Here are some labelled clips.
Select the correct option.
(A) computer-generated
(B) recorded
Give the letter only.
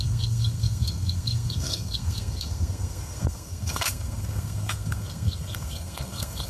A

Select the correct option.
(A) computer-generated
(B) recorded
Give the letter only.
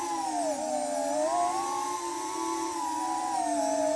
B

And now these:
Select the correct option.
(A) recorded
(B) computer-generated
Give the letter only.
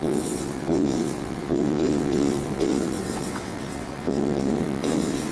B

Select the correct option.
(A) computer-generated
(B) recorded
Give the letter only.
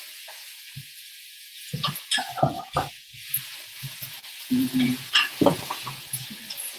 A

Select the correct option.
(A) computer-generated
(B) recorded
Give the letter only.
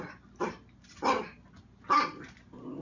B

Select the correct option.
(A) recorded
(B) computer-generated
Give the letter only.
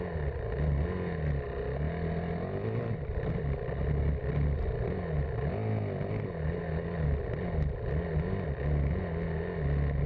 A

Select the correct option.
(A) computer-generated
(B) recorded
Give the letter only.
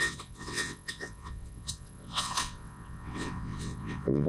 A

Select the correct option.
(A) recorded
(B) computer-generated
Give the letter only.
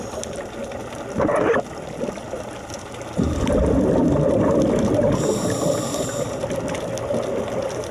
A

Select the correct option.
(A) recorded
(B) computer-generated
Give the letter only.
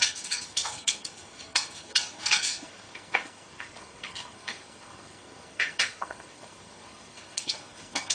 B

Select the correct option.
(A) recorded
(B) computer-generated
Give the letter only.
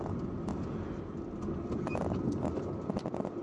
A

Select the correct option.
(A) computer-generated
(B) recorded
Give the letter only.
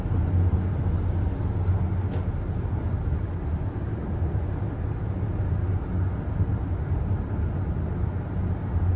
B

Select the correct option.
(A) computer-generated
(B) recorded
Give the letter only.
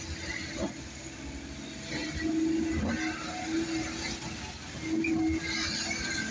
B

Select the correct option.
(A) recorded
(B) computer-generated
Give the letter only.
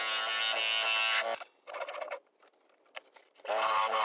A